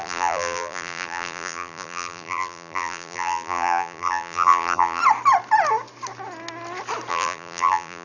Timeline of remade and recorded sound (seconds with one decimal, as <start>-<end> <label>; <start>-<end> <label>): 0.0-5.0 remade; 5.0-7.1 recorded; 7.1-8.0 remade